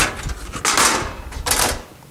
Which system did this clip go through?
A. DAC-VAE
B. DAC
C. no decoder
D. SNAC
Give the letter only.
C